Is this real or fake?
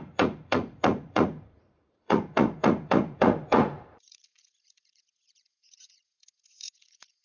fake